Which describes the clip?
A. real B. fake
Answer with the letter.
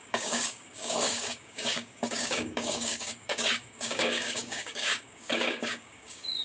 B